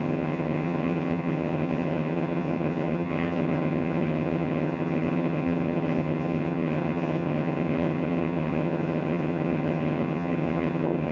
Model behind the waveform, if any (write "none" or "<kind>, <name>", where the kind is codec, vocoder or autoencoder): vocoder, HiFi-GAN